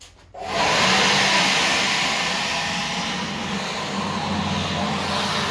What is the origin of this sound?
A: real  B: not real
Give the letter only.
A